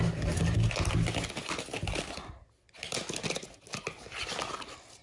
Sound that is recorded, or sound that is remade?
recorded